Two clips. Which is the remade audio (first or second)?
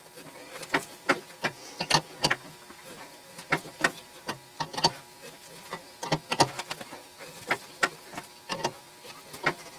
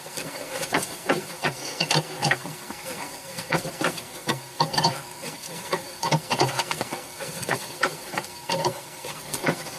second